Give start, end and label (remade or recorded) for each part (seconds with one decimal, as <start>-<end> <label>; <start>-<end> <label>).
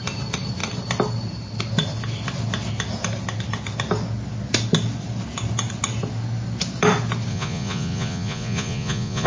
0.0-7.3 recorded; 7.3-9.3 remade